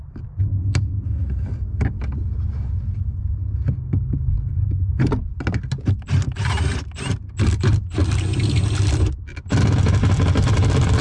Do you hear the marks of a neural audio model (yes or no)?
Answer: no